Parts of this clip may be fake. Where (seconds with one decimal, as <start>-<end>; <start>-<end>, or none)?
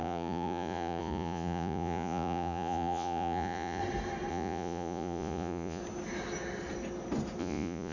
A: 0.0-3.8; 4.3-5.8; 7.4-7.9